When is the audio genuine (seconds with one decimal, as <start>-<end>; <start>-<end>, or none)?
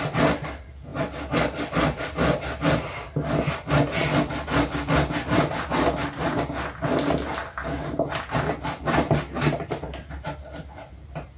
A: 0.0-11.4